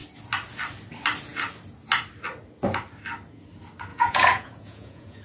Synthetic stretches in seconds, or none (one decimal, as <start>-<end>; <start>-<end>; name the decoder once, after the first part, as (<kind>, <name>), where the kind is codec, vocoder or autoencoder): 3.9-5.2 (vocoder, Vocos)